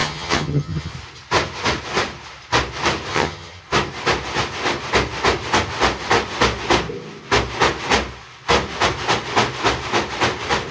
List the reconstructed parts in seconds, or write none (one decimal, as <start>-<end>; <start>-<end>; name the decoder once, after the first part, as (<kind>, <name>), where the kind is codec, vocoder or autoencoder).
0.0-0.9 (vocoder, HiFi-GAN); 3.1-3.6